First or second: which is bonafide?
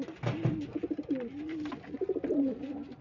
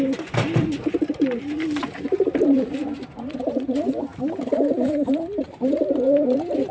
first